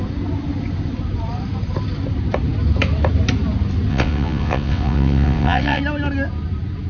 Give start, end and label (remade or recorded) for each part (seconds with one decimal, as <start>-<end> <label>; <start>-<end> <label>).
0.0-3.9 recorded; 3.9-5.8 remade; 5.8-6.9 recorded